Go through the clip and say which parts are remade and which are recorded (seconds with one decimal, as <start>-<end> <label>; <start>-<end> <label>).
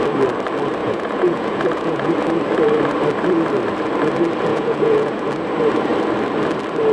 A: 0.0-0.8 recorded; 0.8-2.1 remade; 2.1-4.5 recorded; 4.5-5.3 remade; 5.3-6.9 recorded